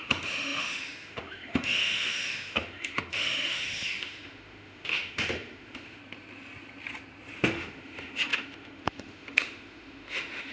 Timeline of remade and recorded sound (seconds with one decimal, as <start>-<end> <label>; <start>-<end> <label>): 0.0-6.0 remade; 6.0-7.5 recorded; 7.5-10.5 remade